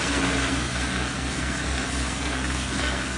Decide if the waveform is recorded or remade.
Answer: remade